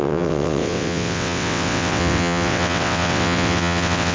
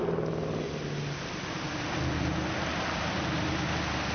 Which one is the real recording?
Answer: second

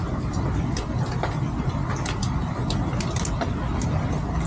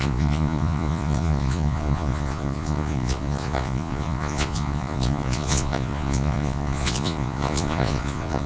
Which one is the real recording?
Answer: first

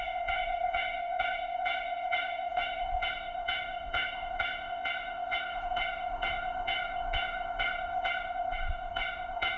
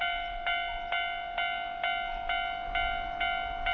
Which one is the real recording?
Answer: second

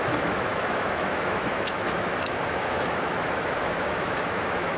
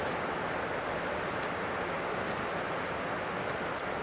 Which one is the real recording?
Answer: second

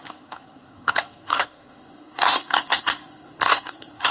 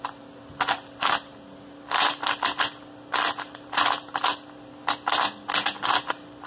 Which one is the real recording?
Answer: second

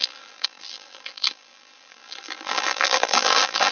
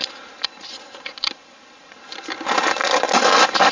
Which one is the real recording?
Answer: second